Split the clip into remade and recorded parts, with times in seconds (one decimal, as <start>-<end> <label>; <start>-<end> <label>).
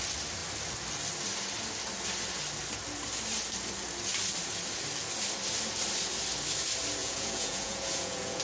0.0-7.0 recorded; 7.0-8.4 remade